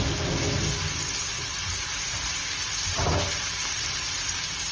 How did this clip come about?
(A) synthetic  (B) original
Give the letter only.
B